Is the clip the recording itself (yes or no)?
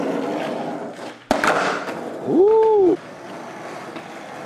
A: yes